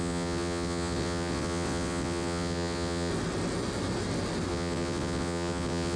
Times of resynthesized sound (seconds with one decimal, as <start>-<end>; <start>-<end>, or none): 0.0-3.1; 4.5-6.0